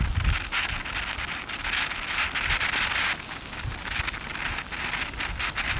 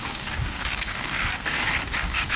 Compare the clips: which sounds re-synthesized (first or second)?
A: second